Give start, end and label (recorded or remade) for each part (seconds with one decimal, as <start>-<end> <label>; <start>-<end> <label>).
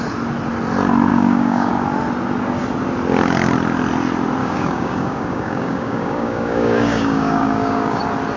0.0-1.1 recorded; 1.1-1.7 remade; 1.7-4.4 recorded; 4.4-8.0 remade; 8.0-8.4 recorded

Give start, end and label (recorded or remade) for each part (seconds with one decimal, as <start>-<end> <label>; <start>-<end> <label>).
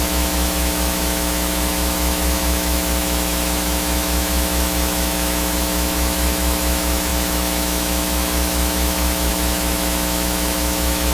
0.0-11.1 remade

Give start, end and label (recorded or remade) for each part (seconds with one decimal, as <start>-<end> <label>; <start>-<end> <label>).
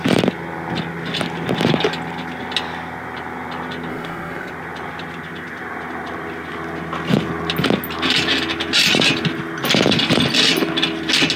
0.0-3.9 recorded; 3.9-4.5 remade; 4.5-11.4 recorded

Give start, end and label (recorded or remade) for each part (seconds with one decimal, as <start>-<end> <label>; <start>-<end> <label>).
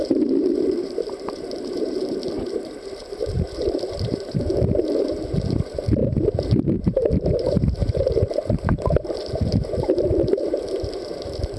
0.0-6.0 remade; 6.0-6.5 recorded; 6.5-11.6 remade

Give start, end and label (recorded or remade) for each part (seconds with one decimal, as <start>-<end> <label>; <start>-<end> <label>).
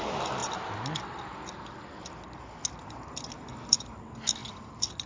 0.0-5.1 recorded